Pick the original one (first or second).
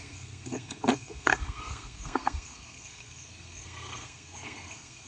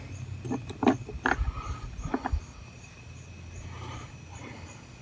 second